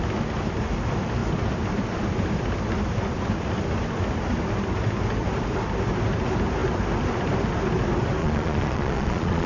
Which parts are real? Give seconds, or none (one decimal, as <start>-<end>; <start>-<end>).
0.0-8.2